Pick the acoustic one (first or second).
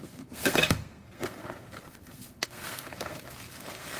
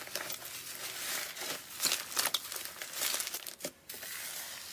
second